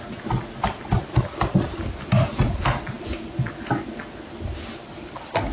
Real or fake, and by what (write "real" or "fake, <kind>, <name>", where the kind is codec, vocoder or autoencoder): real